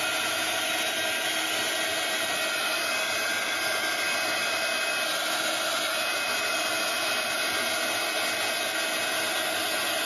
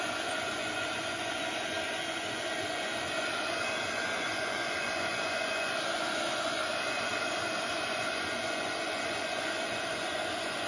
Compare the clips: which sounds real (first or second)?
first